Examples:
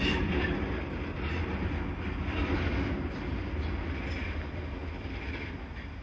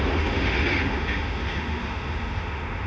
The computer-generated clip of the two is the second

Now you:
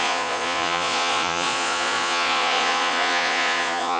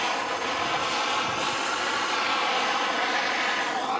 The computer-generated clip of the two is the first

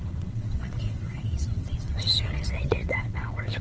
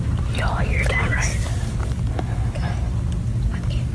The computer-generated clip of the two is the first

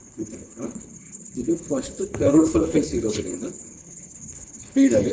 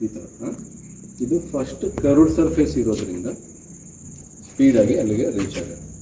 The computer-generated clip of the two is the first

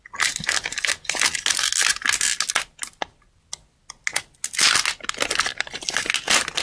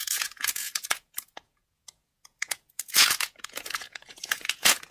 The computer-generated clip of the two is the second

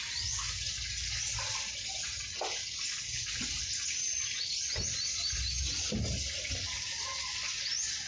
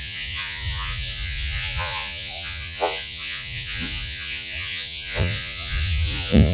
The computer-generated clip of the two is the second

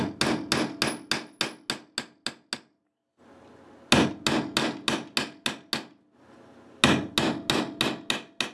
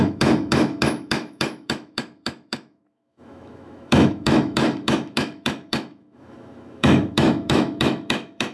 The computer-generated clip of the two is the second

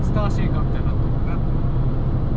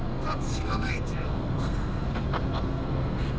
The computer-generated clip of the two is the second